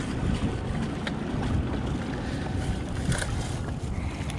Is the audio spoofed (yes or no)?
no